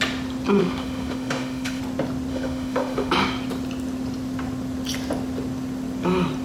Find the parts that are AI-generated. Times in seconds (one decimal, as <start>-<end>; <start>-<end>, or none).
0.6-1.8; 2.3-3.1